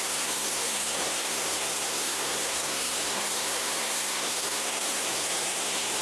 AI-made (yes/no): yes